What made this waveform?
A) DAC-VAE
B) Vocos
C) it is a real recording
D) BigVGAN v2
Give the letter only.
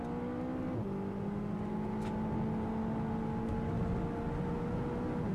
C